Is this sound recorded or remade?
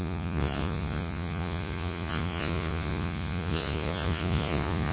remade